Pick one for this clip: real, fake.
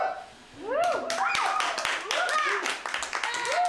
real